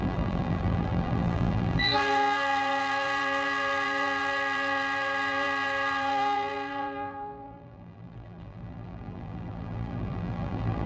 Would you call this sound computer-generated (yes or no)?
yes